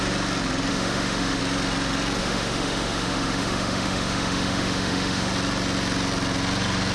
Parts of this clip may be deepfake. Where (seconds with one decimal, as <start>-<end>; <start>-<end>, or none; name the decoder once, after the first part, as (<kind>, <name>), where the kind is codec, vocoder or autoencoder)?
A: 0.7-1.4 (autoencoder, DAC-VAE); 2.2-5.3